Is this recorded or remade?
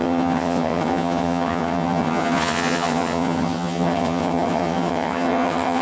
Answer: remade